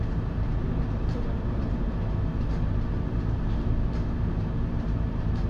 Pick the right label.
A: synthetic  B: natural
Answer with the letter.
A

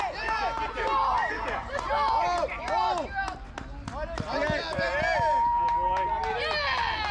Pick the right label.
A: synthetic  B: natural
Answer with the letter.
B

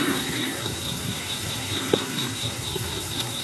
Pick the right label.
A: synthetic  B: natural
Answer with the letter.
A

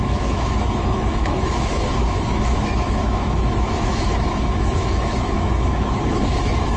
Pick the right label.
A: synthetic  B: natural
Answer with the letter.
A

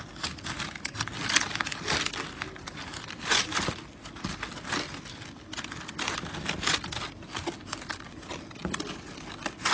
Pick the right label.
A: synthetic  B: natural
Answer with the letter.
B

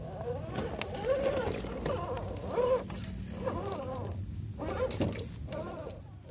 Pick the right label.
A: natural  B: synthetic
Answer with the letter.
A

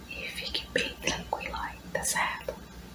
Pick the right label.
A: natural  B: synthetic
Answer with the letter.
A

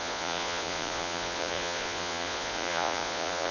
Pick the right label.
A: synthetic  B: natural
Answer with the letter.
A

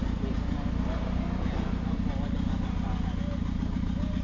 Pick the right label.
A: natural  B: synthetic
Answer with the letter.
A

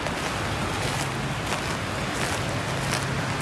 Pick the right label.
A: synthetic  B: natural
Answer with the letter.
B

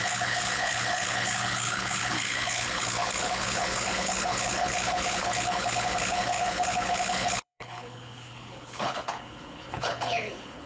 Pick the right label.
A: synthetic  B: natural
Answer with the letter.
A